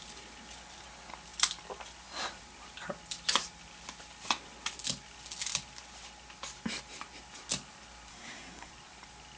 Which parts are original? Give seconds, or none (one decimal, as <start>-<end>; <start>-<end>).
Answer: 0.0-8.1; 8.7-9.4